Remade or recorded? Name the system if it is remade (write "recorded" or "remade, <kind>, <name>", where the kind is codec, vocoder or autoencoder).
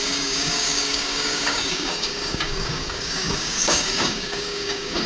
remade, codec, DAC